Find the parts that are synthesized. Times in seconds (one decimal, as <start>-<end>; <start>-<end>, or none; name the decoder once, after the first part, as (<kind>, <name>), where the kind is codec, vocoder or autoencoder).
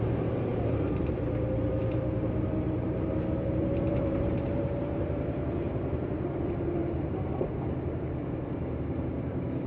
0.0-9.7 (vocoder, BigVGAN v2)